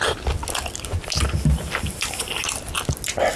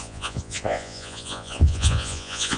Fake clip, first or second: second